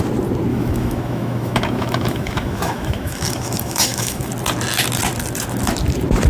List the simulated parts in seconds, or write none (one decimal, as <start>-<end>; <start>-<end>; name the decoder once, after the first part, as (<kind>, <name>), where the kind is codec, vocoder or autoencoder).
0.5-4.3 (autoencoder, DAC-VAE)